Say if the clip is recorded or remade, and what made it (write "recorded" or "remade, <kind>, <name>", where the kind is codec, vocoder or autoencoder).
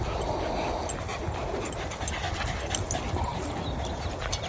recorded